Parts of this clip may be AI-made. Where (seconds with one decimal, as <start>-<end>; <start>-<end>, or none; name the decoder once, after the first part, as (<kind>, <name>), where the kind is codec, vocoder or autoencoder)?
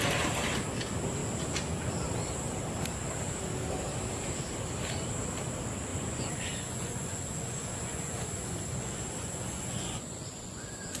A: 5.9-11.0 (vocoder, Vocos)